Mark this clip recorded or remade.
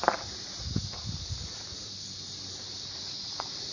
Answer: remade